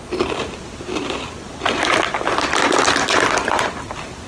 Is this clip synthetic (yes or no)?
no